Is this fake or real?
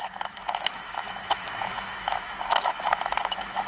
fake